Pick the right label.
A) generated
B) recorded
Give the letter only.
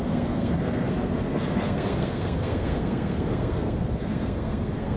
A